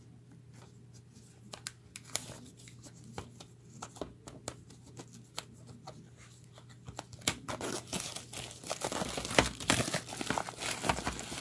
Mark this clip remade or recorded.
recorded